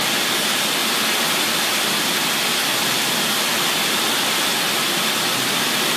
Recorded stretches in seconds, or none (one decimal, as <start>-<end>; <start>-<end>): 0.0-6.0